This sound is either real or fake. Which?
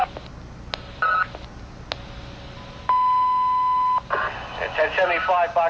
real